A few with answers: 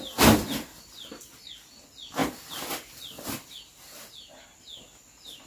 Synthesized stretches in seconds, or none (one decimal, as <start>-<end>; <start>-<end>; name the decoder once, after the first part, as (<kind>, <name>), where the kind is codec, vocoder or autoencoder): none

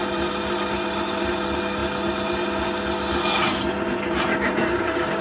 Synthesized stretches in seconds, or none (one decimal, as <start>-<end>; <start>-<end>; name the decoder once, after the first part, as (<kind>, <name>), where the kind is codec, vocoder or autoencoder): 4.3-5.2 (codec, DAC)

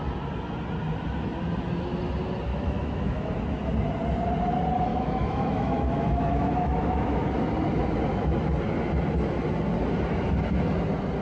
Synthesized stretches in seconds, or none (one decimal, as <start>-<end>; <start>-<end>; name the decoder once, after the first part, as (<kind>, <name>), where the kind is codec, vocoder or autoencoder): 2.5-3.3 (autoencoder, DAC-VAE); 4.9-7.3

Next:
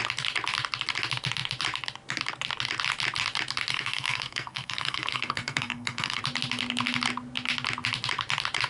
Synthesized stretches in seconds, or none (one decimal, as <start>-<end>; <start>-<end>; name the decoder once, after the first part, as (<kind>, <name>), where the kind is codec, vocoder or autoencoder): 3.7-6.2 (codec, SNAC)

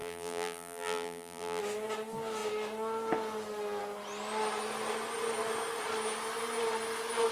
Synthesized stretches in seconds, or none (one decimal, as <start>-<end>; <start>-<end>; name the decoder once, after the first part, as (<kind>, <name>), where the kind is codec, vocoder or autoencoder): 0.0-1.6 (vocoder, BigVGAN v2)

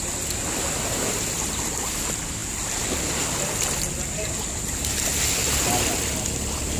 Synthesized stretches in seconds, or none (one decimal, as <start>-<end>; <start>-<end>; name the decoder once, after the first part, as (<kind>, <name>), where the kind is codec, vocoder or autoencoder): none